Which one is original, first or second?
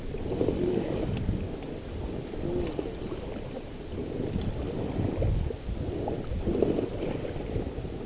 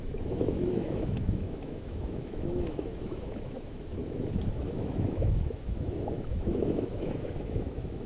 first